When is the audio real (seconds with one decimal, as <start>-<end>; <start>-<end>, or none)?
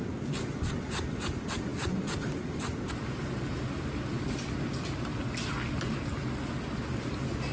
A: 0.0-7.5